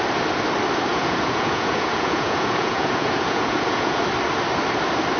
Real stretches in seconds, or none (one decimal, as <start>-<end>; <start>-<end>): 0.0-0.9; 4.0-5.2